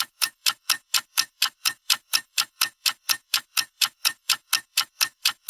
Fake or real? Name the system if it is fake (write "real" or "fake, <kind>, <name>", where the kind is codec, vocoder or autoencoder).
fake, autoencoder, DAC-VAE